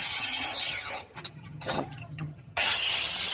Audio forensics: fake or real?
fake